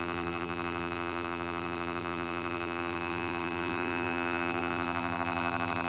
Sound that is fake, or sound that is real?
fake